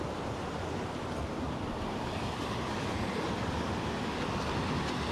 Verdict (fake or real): real